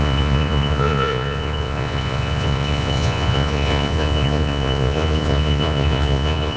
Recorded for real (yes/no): no